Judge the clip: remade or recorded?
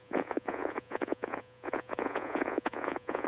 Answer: remade